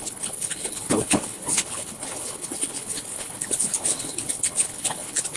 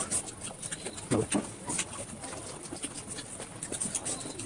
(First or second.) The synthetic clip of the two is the first